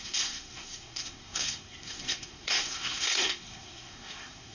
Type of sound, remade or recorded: remade